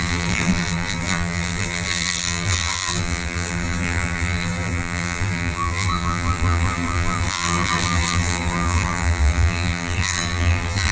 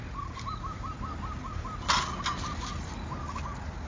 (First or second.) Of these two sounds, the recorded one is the second